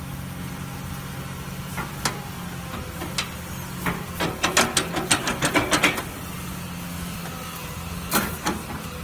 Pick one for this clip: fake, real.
real